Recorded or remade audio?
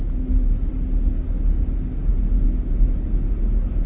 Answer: recorded